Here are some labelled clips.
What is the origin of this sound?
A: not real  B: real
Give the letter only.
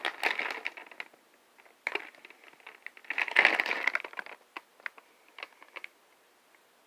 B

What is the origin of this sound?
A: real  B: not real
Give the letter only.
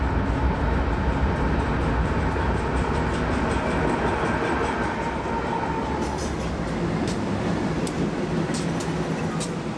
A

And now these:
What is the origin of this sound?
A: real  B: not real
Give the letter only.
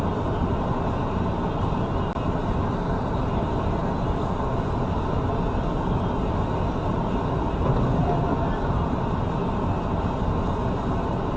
A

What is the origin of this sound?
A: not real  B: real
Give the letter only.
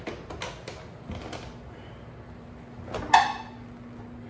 B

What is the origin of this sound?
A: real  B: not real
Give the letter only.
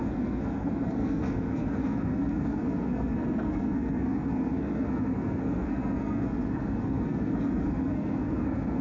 B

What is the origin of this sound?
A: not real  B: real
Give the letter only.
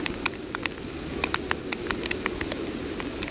B